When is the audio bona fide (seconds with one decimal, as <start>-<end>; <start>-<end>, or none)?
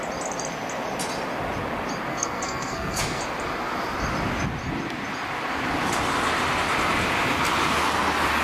0.0-2.1; 3.2-8.4